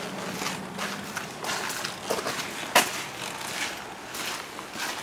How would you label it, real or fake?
real